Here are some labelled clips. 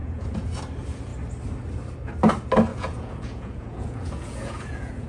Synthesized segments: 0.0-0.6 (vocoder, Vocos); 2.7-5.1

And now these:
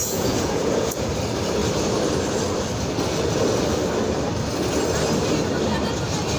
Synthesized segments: 0.0-1.1 (vocoder, Vocos)

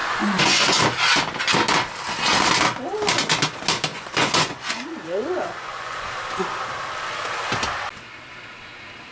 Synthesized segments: 0.0-0.8 (vocoder, Vocos); 3.9-6.1